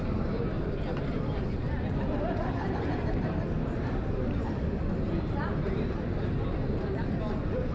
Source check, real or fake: real